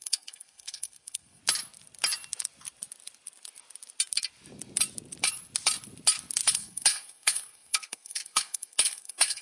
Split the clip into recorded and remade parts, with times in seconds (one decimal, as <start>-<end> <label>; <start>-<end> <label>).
0.0-1.4 remade; 1.4-6.5 recorded; 6.5-9.4 remade